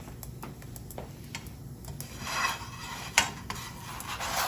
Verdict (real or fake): real